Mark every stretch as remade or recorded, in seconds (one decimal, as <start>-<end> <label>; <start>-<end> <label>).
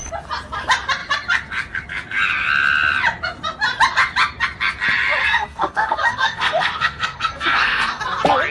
0.0-5.2 recorded; 5.2-8.0 remade; 8.0-8.5 recorded